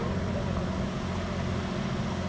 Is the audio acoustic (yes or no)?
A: yes